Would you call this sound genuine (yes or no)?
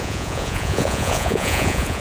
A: no